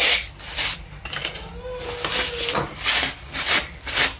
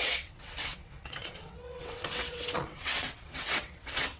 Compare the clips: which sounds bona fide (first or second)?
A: first